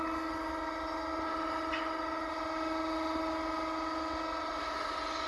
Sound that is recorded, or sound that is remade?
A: recorded